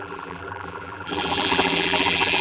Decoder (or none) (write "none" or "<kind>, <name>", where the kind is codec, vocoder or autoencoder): vocoder, BigVGAN v2